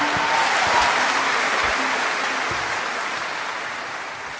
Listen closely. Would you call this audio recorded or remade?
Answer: recorded